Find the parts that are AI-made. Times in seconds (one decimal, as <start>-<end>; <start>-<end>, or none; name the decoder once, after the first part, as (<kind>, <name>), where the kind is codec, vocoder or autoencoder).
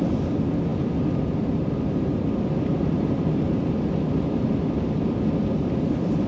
2.7-3.6 (vocoder, BigVGAN v2)